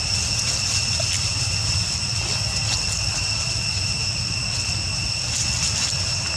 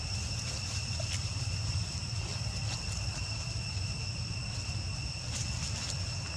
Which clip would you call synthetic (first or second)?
second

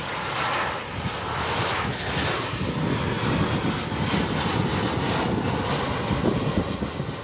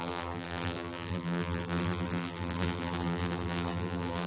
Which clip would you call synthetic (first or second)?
second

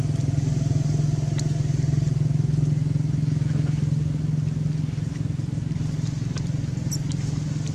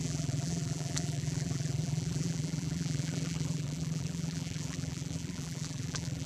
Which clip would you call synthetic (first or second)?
second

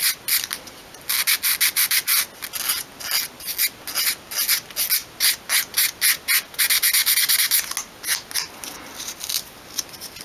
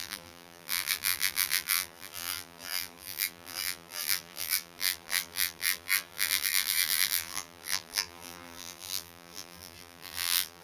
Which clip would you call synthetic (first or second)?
second